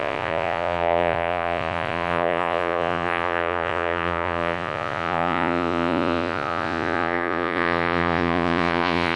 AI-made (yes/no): yes